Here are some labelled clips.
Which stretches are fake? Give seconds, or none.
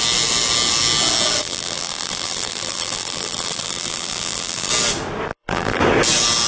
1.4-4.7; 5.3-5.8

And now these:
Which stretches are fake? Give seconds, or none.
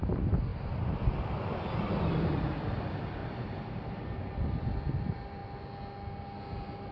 0.0-5.4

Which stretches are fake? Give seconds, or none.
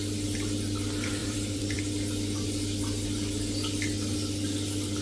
1.2-1.8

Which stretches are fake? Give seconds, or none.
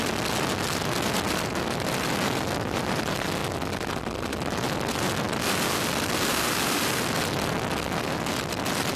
none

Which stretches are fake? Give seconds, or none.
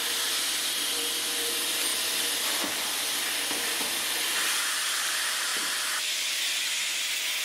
none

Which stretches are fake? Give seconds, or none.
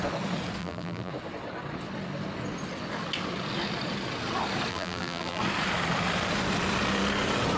0.6-1.1; 4.7-5.4